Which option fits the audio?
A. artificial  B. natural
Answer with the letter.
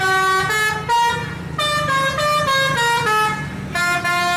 B